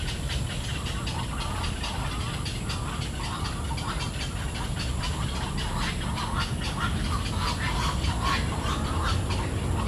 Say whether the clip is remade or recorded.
recorded